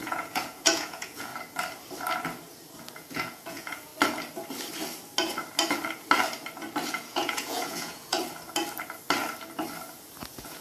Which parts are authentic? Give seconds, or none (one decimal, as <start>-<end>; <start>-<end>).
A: 1.3-2.9; 3.9-6.9; 8.2-10.2